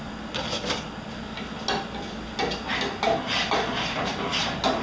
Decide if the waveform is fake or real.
real